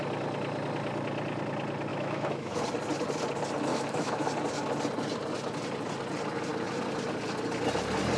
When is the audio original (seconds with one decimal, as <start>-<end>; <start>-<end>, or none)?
0.0-1.9; 2.6-3.7; 4.3-8.2

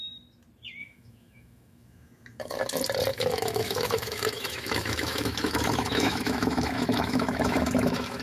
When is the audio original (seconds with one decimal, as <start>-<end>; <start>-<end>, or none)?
0.0-0.8; 2.6-3.1